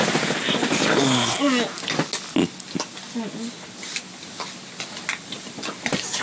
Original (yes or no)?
yes